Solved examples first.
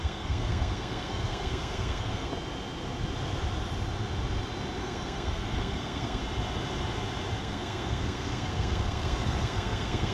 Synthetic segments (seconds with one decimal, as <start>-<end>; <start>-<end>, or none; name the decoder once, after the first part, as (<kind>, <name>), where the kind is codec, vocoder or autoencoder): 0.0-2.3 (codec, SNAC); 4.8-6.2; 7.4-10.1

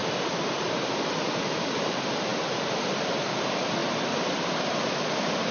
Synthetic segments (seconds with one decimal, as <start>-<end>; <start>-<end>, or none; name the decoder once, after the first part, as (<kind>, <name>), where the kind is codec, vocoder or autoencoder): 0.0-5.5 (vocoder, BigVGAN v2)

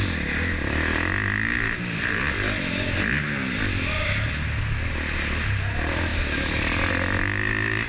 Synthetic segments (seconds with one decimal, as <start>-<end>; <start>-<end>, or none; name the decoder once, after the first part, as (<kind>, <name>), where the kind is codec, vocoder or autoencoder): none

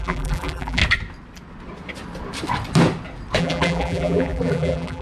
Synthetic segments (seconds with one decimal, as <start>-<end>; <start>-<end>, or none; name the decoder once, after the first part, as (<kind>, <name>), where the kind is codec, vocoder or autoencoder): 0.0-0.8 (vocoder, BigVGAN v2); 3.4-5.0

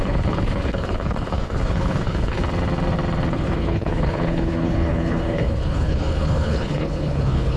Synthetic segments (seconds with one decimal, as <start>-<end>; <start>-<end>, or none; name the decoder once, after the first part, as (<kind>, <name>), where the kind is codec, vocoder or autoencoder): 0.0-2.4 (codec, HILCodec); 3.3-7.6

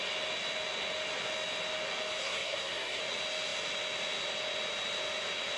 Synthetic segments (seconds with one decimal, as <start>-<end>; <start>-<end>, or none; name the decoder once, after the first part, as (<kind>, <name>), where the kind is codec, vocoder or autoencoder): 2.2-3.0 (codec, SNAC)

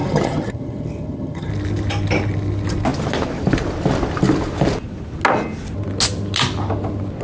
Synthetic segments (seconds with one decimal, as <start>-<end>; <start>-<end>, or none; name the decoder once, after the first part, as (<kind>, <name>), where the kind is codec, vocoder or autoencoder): 0.0-1.5 (vocoder, HiFi-GAN)

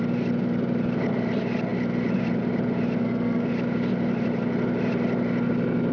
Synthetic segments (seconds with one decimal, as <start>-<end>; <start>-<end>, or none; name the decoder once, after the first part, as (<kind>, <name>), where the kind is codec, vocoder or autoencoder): 3.0-3.5 (codec, SNAC)